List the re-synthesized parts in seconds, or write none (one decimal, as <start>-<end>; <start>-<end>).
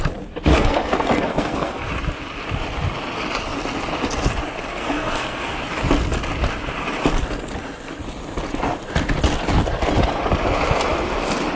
0.5-1.9; 4.7-5.6